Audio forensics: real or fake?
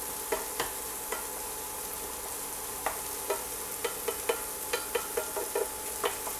real